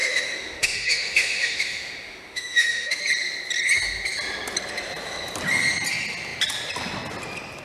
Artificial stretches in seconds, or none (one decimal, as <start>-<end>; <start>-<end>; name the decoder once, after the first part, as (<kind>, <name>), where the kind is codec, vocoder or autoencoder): 0.0-3.0 (autoencoder, DAC-VAE)